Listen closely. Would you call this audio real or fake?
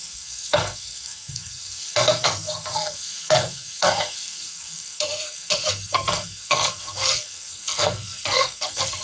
fake